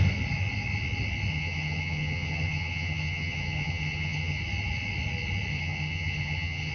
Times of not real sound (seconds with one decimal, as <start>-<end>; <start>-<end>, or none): 1.3-4.4; 5.5-6.7